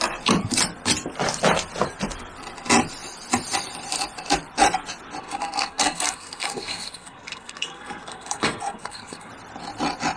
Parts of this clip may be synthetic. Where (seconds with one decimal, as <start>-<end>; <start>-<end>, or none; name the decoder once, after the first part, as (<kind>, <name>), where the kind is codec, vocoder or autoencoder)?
5.2-9.3 (codec, SNAC)